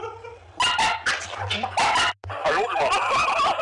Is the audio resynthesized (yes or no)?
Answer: no